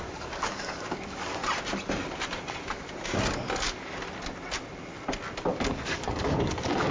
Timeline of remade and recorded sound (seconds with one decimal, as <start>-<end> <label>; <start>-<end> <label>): 0.0-1.4 remade; 1.4-5.5 recorded; 5.5-6.9 remade